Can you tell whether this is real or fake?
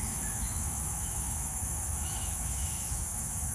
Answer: fake